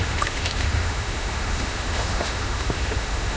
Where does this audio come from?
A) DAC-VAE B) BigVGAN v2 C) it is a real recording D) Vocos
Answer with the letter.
A